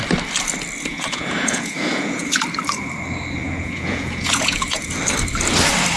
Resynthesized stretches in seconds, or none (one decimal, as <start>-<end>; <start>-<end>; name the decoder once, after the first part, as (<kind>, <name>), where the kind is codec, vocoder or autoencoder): 0.9-2.4 (vocoder, Vocos); 3.4-4.9